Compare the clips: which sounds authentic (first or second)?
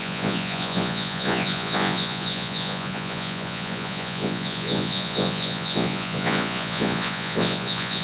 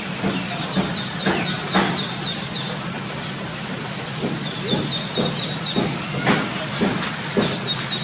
second